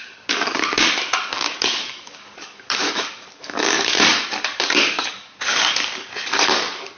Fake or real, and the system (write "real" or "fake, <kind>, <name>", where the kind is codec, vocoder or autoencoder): fake, codec, DAC